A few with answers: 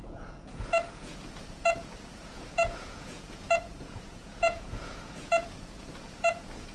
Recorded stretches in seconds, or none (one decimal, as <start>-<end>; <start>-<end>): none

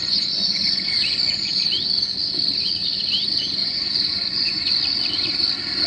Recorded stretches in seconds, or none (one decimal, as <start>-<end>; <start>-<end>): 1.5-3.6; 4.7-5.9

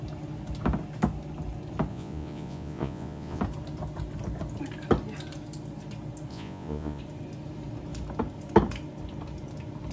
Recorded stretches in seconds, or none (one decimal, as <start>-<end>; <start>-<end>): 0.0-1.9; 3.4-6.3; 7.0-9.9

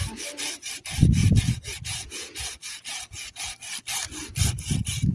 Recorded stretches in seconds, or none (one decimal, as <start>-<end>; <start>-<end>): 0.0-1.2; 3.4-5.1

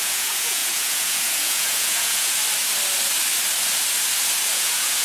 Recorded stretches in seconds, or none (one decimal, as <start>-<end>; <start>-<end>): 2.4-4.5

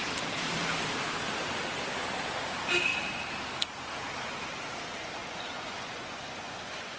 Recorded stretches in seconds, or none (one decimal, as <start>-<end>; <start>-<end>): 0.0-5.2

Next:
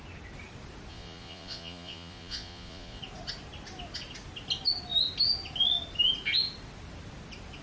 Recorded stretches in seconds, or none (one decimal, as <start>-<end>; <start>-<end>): 0.0-0.9; 3.0-7.6

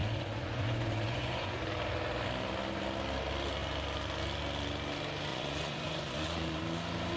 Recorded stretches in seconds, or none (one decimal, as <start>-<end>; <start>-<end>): 1.6-5.3; 6.6-7.2